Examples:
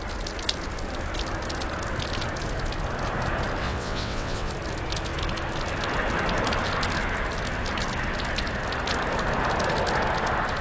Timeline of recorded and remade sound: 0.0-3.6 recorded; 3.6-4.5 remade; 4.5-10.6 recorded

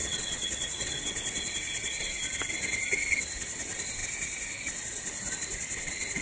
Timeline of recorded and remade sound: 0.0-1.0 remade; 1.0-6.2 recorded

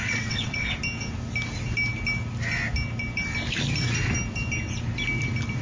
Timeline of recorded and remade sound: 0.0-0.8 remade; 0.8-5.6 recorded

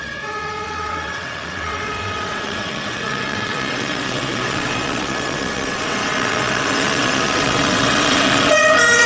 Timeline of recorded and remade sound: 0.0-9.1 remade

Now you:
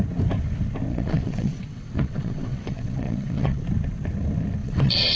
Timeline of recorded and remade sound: 0.0-0.9 recorded; 0.9-3.6 remade; 3.6-4.6 recorded; 4.6-5.2 remade

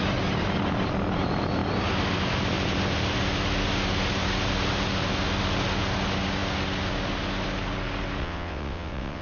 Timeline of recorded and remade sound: 0.0-8.2 recorded; 8.2-9.2 remade

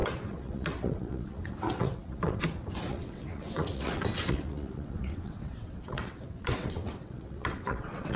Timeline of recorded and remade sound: 0.0-2.4 remade; 2.4-2.9 recorded; 2.9-8.2 remade

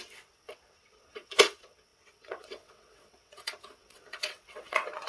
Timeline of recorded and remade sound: 0.0-5.1 remade